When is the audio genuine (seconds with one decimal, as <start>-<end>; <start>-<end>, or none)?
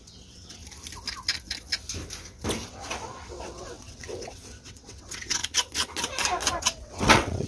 0.6-2.7; 5.4-6.6